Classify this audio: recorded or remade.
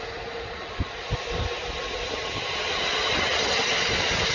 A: recorded